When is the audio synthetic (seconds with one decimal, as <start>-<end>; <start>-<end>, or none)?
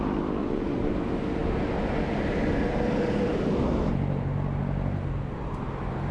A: 0.4-0.9